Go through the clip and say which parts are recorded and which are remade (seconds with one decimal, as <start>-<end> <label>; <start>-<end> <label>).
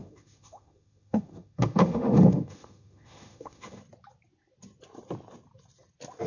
0.0-3.8 remade; 3.8-6.3 recorded